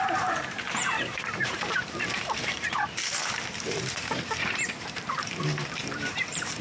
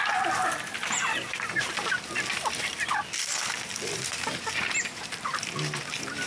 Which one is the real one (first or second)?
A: second